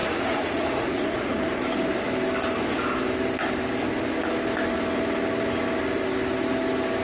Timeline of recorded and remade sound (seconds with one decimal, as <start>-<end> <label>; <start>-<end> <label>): 0.0-1.4 remade; 1.4-7.0 recorded